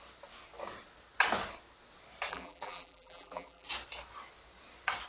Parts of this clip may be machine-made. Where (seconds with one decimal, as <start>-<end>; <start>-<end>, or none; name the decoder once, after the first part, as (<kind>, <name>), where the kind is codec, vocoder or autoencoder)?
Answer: 2.3-3.7 (vocoder, BigVGAN v2)